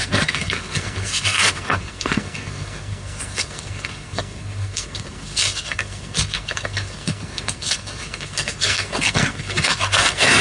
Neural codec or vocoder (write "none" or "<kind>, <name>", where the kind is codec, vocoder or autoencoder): codec, SNAC